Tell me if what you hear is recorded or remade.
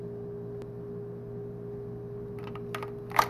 recorded